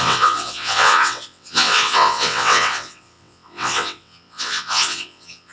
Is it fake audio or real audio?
fake